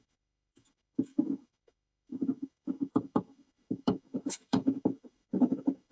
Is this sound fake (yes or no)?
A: yes